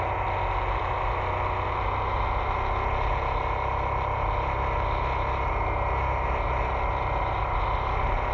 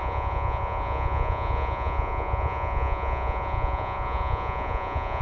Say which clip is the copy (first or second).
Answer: second